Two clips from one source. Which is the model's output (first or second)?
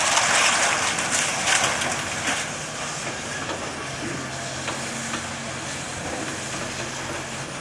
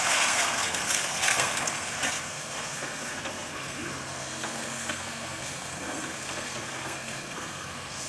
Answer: second